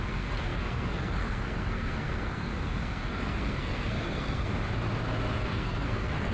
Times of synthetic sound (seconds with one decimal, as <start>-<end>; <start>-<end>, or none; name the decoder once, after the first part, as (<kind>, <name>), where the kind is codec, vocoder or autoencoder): 0.0-4.5 (codec, SNAC); 5.4-6.3